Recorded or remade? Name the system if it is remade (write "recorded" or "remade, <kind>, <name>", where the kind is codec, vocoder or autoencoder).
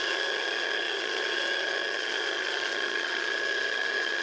remade, vocoder, HiFi-GAN